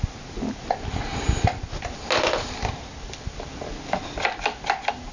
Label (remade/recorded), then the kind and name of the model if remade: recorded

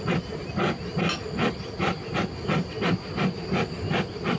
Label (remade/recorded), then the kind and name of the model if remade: recorded